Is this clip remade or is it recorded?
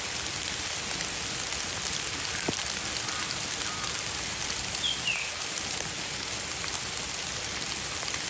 recorded